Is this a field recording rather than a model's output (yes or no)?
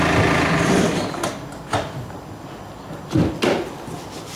yes